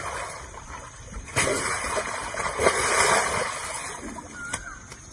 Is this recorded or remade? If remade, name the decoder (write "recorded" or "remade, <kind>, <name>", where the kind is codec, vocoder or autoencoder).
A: recorded